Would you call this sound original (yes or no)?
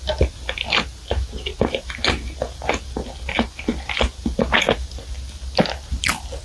yes